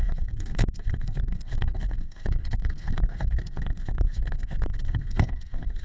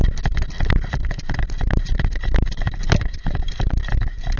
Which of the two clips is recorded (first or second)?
second